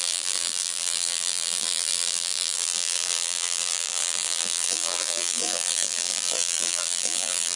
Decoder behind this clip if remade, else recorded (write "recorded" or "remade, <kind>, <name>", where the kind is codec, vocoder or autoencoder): remade, vocoder, BigVGAN v2